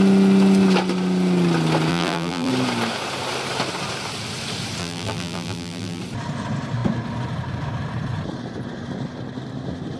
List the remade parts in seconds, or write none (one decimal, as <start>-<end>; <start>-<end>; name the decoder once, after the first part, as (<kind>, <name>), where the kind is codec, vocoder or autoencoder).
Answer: 1.9-2.5 (vocoder, BigVGAN v2); 4.8-6.0

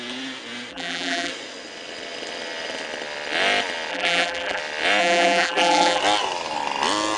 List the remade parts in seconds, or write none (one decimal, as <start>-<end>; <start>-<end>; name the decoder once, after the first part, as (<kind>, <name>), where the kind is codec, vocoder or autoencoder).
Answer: 0.7-1.3 (vocoder, BigVGAN v2); 3.9-4.6; 5.0-6.0

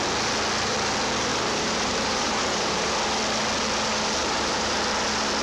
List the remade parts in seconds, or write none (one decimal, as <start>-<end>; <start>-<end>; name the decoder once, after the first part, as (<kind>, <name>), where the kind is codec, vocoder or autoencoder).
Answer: 1.3-2.9 (vocoder, BigVGAN v2); 4.2-4.8

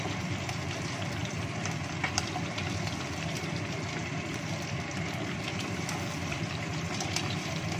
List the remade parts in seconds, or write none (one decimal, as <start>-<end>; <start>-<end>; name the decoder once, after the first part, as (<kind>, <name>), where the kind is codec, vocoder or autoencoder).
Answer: 1.2-2.1 (vocoder, BigVGAN v2); 4.0-7.8

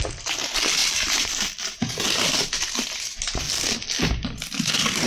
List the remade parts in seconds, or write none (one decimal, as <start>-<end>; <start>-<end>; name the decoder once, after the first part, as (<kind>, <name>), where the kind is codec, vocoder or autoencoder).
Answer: 0.8-3.4 (vocoder, BigVGAN v2)

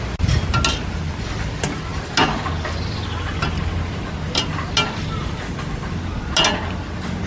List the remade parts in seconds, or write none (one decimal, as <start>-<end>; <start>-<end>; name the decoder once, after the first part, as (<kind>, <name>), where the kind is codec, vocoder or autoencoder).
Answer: none